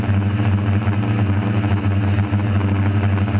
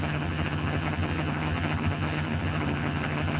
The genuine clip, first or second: first